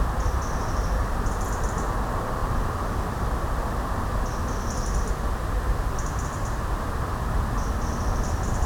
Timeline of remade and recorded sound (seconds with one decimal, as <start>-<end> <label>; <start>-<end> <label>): 0.0-2.4 recorded; 2.4-5.1 remade; 5.1-8.7 recorded